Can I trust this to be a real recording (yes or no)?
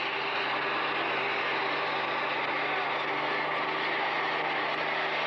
yes